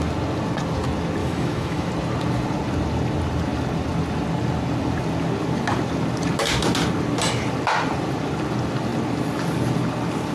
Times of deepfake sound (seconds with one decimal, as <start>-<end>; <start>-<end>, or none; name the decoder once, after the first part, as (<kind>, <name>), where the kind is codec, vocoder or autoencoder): 1.2-1.9 (autoencoder, DAC-VAE)